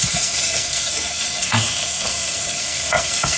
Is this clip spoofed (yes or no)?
yes